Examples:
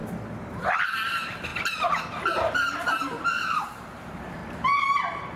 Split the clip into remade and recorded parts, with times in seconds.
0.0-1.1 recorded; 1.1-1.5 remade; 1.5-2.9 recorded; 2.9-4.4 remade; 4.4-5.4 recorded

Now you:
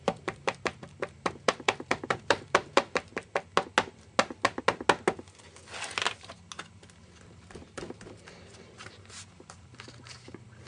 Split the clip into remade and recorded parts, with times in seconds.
0.0-3.1 remade; 3.1-7.0 recorded; 7.0-10.7 remade

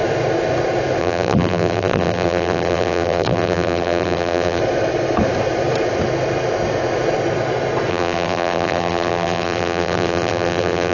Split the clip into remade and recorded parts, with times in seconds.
0.0-1.0 recorded; 1.0-4.6 remade; 4.6-7.9 recorded; 7.9-10.9 remade

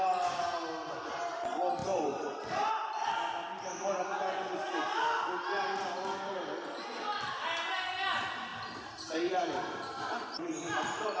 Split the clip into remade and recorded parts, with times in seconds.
0.0-1.8 recorded; 1.8-2.7 remade; 2.7-8.5 recorded; 8.5-10.5 remade; 10.5-11.2 recorded

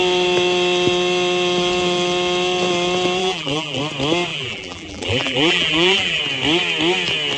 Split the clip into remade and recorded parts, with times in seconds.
0.0-3.2 recorded; 3.2-3.8 remade; 3.8-4.3 recorded; 4.3-6.2 remade; 6.2-7.4 recorded

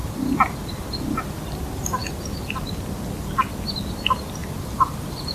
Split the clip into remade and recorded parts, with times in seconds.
0.0-0.9 remade; 0.9-4.4 recorded; 4.4-5.3 remade